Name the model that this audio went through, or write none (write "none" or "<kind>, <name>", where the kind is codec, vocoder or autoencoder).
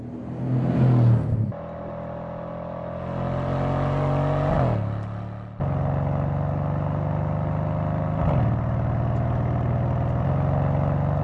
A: none